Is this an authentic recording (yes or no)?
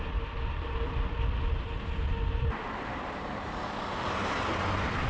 yes